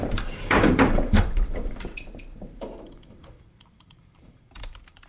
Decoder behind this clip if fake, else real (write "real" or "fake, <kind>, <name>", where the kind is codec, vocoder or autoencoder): fake, vocoder, BigVGAN v2